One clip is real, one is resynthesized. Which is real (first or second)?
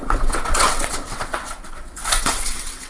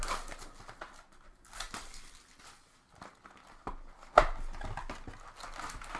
second